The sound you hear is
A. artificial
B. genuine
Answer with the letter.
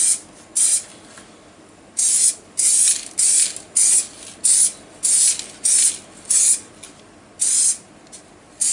B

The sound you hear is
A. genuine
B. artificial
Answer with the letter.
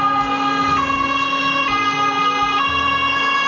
A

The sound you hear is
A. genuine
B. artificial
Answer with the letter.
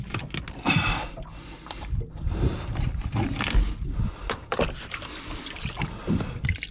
A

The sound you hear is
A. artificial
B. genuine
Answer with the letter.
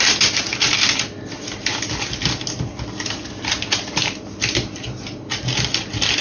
B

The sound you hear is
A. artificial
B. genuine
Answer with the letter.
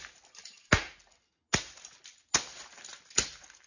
B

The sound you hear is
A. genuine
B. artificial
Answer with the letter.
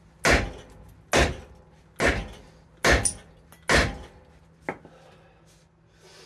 A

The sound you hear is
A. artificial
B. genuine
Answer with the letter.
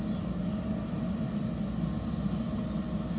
B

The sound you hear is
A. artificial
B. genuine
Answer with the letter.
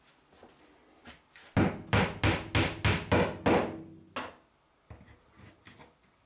B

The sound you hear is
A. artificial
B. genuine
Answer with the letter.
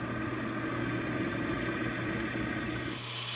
B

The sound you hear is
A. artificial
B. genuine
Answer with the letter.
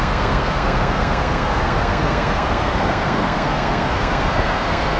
A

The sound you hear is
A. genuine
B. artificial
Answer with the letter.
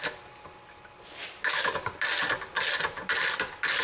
A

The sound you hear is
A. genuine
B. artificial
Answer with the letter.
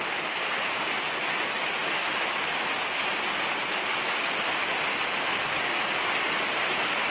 A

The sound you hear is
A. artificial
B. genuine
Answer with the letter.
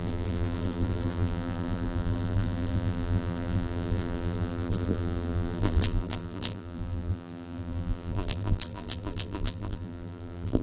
A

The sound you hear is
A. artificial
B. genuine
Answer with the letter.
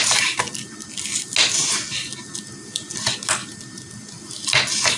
B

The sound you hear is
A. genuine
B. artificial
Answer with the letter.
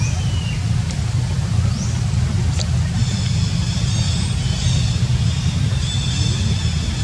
A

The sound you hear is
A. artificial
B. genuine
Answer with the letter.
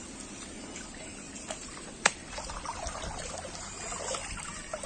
A